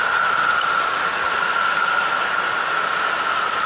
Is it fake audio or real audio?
real